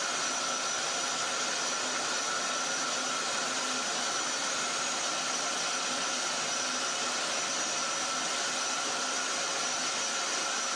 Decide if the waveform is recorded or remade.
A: recorded